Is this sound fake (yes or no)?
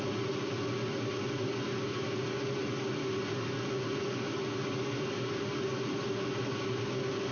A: no